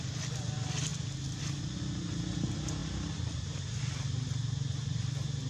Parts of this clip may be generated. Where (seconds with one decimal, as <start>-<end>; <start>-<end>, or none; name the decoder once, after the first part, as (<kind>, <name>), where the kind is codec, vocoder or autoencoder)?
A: none